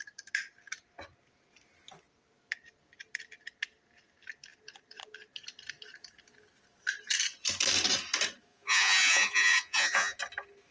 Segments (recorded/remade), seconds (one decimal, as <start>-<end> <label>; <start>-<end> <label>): 0.0-8.5 recorded; 8.5-10.2 remade; 10.2-10.7 recorded

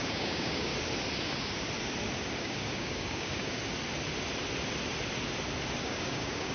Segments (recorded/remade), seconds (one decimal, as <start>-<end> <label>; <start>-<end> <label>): 0.0-0.7 remade; 0.7-2.4 recorded; 2.4-3.6 remade; 3.6-5.8 recorded; 5.8-6.5 remade

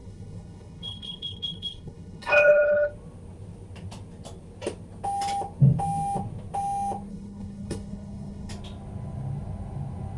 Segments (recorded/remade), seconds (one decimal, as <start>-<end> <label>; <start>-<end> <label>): 0.0-2.9 remade; 2.9-7.1 recorded; 7.1-8.5 remade; 8.5-10.2 recorded

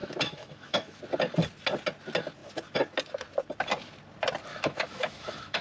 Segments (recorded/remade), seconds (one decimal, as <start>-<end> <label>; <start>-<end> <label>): 0.0-1.0 remade; 1.0-4.5 recorded; 4.5-5.6 remade